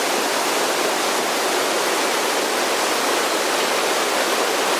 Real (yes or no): yes